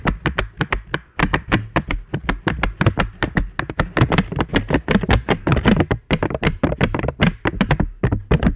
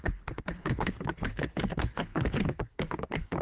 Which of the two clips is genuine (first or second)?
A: first